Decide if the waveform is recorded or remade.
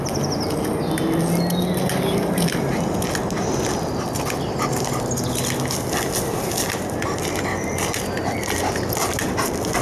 recorded